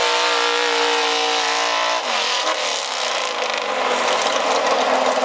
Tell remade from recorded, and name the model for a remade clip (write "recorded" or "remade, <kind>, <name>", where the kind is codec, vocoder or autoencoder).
recorded